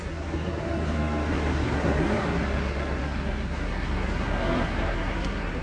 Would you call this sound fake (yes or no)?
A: yes